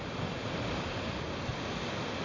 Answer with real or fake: real